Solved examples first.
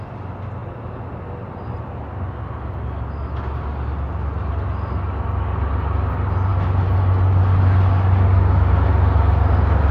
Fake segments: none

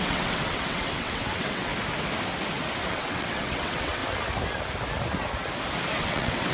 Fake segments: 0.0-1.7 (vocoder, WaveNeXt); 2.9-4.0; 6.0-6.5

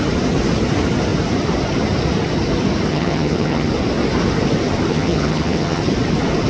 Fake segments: 2.9-3.7 (vocoder, HiFi-GAN); 4.9-5.8